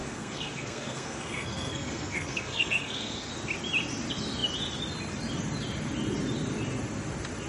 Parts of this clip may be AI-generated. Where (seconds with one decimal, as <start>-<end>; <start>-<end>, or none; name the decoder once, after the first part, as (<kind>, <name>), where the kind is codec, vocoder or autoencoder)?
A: 0.0-3.3 (codec, SNAC)